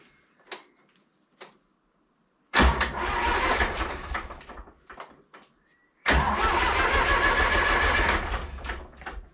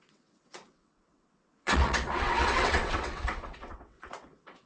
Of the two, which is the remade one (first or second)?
second